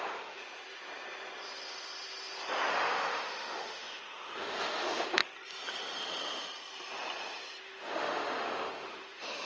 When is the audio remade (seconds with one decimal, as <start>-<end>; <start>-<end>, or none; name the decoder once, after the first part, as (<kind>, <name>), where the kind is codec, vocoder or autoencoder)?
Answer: 0.0-0.4 (autoencoder, DAC-VAE); 2.7-5.2; 7.6-9.5